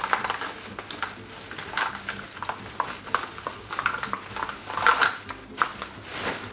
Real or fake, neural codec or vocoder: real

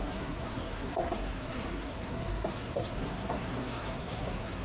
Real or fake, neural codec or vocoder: fake, codec, SNAC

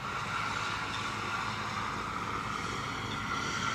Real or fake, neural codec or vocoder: real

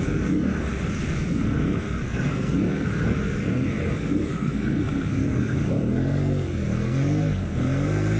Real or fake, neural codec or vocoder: fake, codec, SNAC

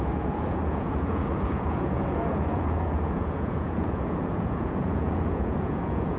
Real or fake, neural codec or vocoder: fake, vocoder, Vocos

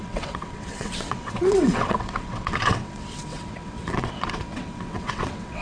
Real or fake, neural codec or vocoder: fake, vocoder, WaveNeXt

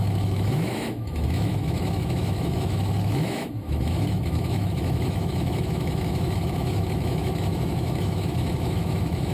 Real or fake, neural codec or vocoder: fake, autoencoder, DAC-VAE